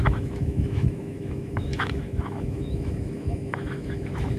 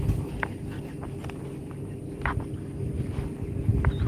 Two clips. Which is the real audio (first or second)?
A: second